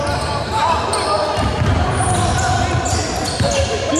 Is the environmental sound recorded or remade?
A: recorded